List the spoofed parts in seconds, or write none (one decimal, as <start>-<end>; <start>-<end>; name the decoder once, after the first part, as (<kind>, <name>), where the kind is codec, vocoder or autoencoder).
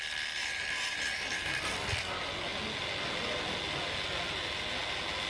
0.4-1.7 (vocoder, BigVGAN v2)